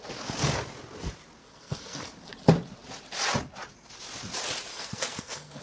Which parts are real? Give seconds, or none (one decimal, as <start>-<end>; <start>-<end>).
0.0-1.4; 2.1-4.7